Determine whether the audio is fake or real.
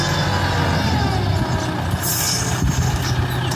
real